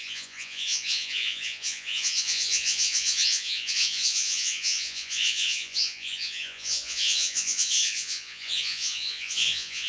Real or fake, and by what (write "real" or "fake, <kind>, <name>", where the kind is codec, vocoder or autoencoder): fake, vocoder, Vocos